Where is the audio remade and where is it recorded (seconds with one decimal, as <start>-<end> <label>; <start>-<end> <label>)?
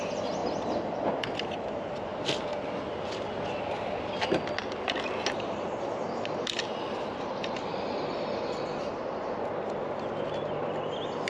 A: 0.0-11.3 recorded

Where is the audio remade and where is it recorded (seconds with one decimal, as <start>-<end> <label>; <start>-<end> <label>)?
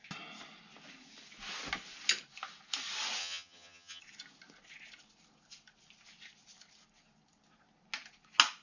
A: 0.0-3.2 recorded; 3.2-4.0 remade; 4.0-8.6 recorded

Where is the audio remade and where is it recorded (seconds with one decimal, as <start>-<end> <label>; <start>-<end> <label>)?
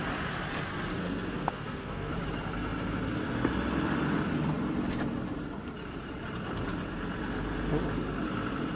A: 0.0-1.0 recorded; 1.0-2.1 remade; 2.1-8.8 recorded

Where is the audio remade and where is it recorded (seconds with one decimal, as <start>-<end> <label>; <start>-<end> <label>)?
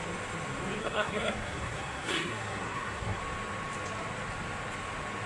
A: 0.0-0.8 recorded; 0.8-3.2 remade; 3.2-5.3 recorded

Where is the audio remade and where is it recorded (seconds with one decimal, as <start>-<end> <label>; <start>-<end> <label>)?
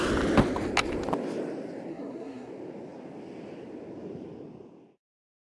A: 0.0-1.9 recorded; 1.9-2.5 remade; 2.5-5.5 recorded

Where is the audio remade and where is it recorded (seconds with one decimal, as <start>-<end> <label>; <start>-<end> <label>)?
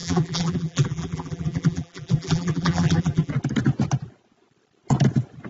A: 0.0-3.3 remade; 3.3-5.5 recorded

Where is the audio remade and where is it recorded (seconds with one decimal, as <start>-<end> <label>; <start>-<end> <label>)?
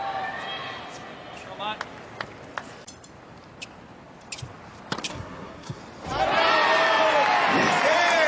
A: 0.0-5.1 recorded; 5.1-5.8 remade; 5.8-8.3 recorded